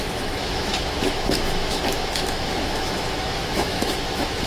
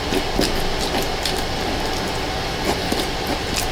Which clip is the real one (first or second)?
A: second